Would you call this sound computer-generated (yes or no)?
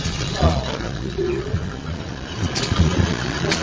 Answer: yes